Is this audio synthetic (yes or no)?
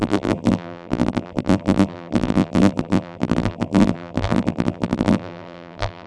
yes